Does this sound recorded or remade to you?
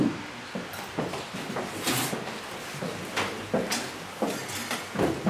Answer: recorded